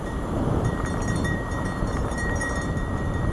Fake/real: fake